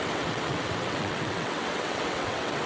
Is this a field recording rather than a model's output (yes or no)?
no